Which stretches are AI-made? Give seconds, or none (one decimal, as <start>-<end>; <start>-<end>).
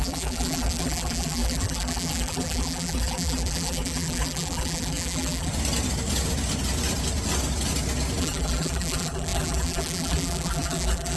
0.0-5.5; 8.2-11.2